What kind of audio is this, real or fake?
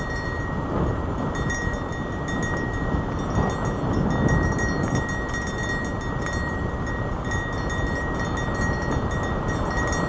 real